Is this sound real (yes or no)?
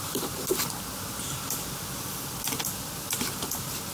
yes